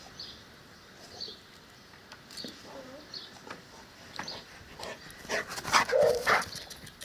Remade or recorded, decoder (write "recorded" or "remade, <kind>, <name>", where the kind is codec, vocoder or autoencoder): recorded